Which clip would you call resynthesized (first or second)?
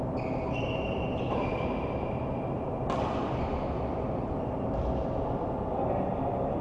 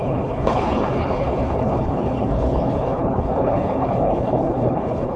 second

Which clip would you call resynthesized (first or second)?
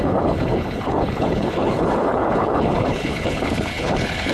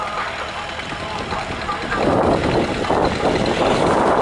first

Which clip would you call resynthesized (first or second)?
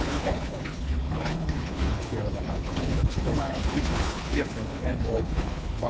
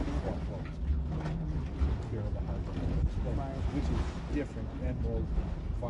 first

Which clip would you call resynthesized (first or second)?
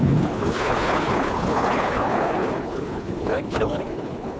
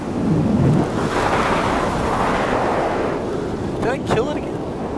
first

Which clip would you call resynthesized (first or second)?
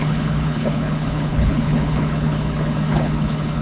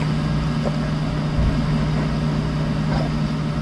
first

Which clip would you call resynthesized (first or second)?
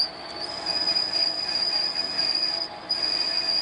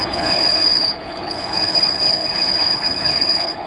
second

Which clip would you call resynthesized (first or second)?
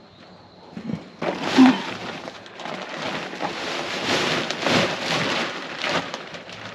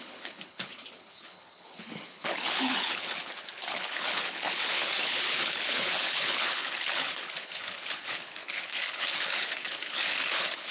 second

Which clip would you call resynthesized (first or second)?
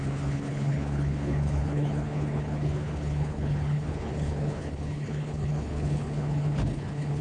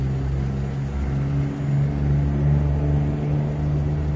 first